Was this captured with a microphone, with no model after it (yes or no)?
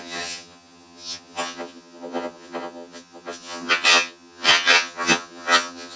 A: no